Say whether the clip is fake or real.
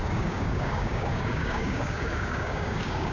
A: fake